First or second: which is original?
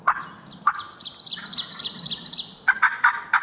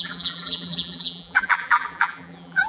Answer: first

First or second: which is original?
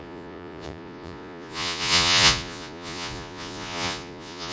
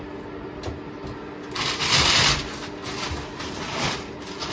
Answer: second